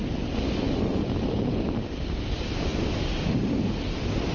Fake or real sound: real